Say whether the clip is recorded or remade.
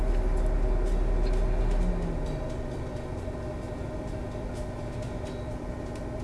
recorded